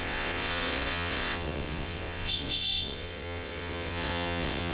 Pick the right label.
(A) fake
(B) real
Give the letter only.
A